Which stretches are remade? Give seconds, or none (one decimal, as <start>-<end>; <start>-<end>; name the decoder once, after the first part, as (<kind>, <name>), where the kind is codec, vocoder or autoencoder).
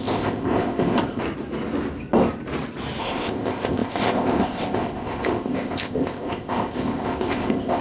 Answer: 0.0-1.2 (codec, ZipCodec); 3.0-7.8